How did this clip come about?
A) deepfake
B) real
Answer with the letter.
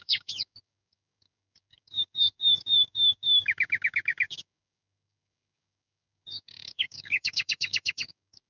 A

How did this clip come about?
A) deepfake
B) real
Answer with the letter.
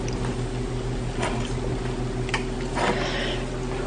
B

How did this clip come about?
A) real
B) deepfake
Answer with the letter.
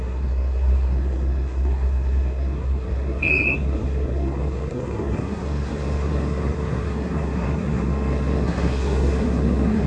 B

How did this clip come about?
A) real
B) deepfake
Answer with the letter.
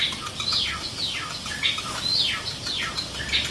A